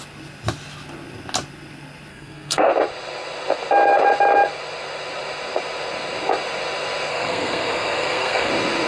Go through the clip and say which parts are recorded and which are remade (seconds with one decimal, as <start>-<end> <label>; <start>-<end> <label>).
0.0-2.1 recorded; 2.1-2.7 remade; 2.7-7.1 recorded; 7.1-8.5 remade; 8.5-8.9 recorded